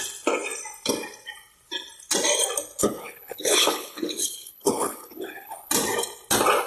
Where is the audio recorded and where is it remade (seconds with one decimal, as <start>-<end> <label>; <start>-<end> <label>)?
0.0-2.8 recorded; 2.8-5.7 remade; 5.7-6.7 recorded